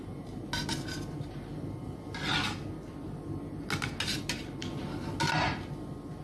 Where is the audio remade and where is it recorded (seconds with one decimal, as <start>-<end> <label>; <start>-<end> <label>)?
0.0-6.2 recorded